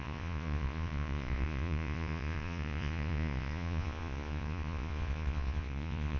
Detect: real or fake fake